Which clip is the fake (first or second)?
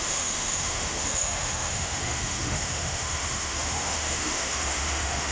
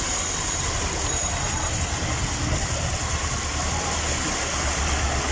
first